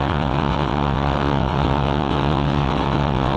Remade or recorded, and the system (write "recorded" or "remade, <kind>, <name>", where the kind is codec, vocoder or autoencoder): remade, vocoder, WaveNeXt